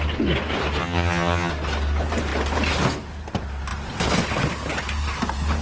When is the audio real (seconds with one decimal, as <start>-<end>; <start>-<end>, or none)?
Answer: 0.0-0.8; 1.5-5.6